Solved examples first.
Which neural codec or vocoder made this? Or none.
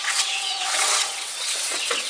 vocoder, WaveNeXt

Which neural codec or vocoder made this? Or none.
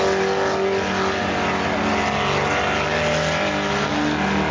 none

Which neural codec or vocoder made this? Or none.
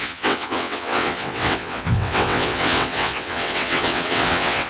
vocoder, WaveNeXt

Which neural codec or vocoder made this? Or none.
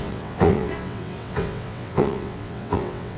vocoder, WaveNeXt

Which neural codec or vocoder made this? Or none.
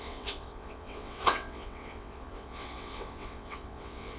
vocoder, WaveNeXt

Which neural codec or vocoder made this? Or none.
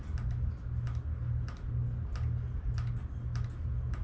none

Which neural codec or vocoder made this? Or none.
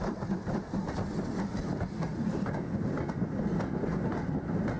none